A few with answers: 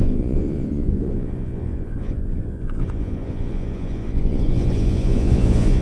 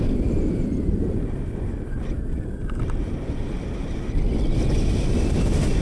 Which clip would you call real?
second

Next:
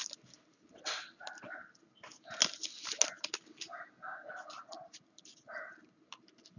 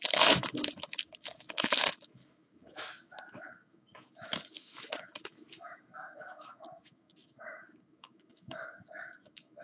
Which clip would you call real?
first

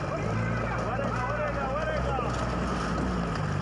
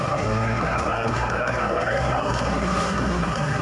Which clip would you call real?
first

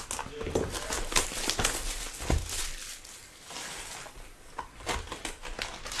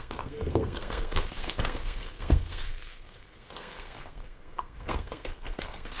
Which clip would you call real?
first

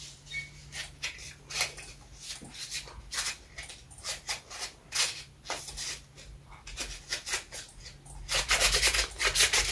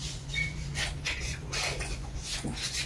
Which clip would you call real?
first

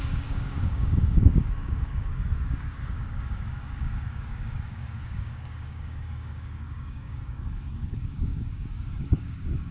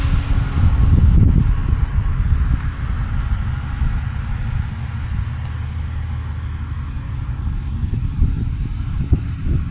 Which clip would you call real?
second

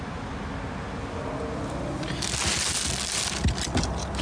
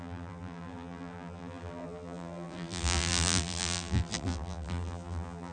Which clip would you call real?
first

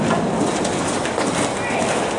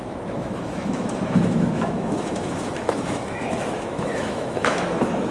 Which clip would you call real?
first